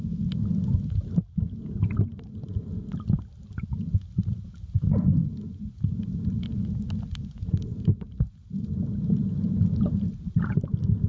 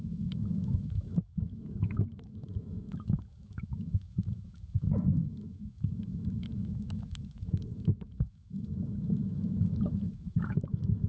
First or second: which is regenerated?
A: second